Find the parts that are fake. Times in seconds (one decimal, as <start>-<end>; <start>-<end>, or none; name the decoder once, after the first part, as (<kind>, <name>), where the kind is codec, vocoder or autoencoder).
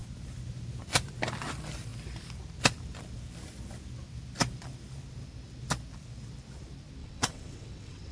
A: 7.0-8.1 (vocoder, WaveNeXt)